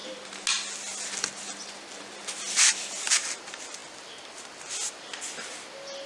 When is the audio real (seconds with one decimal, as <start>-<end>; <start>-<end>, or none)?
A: 0.0-6.1